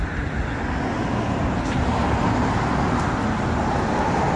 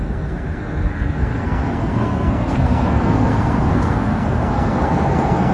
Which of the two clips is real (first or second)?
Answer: first